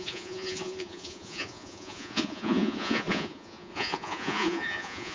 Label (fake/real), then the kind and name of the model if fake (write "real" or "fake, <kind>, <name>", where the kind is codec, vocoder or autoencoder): fake, vocoder, Vocos